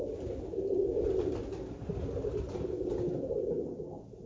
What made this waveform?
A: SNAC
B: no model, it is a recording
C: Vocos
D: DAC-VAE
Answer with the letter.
B